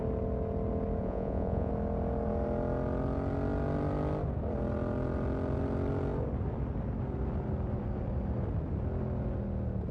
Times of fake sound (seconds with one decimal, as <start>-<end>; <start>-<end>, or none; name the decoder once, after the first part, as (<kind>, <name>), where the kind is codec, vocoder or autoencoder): 1.0-1.7 (vocoder, Vocos)